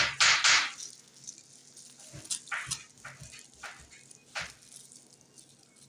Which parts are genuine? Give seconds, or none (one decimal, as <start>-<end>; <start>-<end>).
0.0-5.9